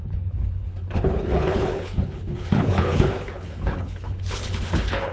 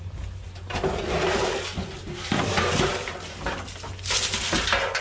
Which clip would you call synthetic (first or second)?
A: first